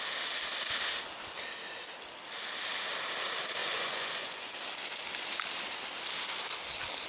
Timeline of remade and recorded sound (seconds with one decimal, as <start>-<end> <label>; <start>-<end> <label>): 0.0-3.6 recorded; 3.6-4.5 remade; 4.5-7.1 recorded